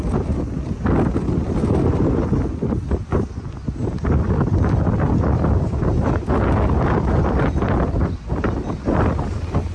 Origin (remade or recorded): recorded